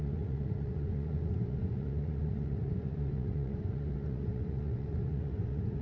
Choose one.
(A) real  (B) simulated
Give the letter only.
B